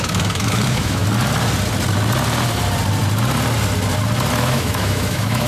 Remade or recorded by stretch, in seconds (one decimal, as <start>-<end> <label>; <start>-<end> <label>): 0.0-1.0 remade; 1.0-4.3 recorded; 4.3-5.5 remade